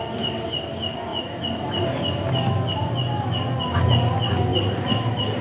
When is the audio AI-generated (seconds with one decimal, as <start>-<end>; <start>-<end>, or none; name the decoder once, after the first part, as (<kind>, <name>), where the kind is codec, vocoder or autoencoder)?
4.5-5.4 (vocoder, BigVGAN v2)